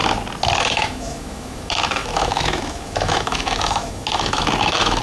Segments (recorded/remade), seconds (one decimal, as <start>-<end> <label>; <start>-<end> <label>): 0.0-0.6 recorded; 0.6-5.0 remade